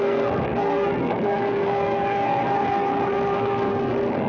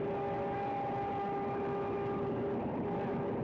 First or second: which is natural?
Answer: second